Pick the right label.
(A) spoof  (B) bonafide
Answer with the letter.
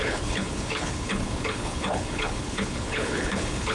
A